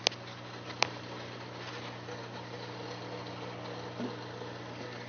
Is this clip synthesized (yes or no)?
no